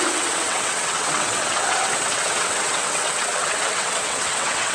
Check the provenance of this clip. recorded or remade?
remade